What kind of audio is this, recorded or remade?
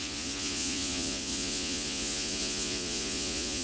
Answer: remade